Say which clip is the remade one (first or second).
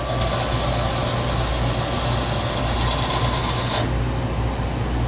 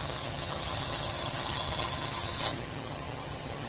second